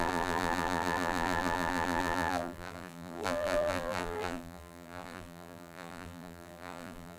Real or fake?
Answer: fake